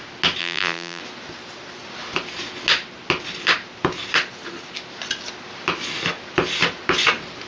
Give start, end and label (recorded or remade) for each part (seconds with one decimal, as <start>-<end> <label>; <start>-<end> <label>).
0.0-0.4 recorded; 0.4-1.0 remade; 1.0-7.5 recorded